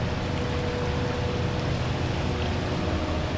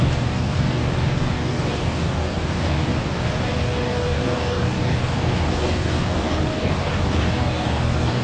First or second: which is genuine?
first